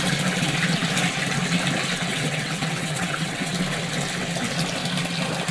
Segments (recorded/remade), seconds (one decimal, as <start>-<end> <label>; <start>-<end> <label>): 0.0-2.1 recorded; 2.1-3.5 remade; 3.5-5.5 recorded

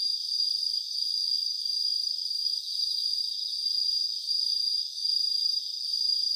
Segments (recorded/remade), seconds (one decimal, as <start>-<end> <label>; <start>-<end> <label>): 0.0-3.1 remade; 3.1-3.8 recorded; 3.8-4.5 remade; 4.5-5.9 recorded; 5.9-6.4 remade

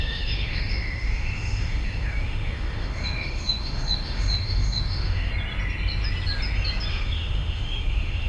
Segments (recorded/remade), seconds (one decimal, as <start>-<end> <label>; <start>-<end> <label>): 0.0-5.3 remade; 5.3-6.9 recorded; 6.9-8.3 remade

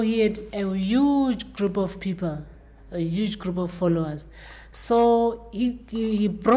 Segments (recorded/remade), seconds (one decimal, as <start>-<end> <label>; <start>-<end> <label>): 0.0-2.5 recorded; 2.5-4.2 remade; 4.2-6.6 recorded

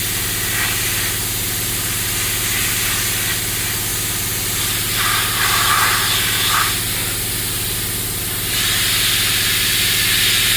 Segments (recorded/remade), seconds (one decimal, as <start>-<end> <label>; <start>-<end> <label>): 0.0-10.6 recorded